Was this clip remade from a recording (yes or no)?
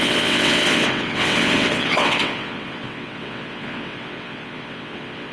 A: yes